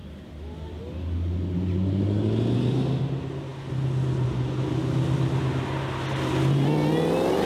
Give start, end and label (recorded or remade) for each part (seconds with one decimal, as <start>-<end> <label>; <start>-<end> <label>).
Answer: 0.0-7.5 recorded